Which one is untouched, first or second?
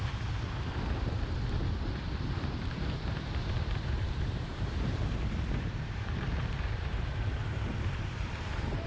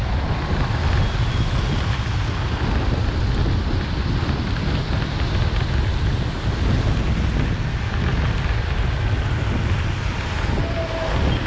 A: second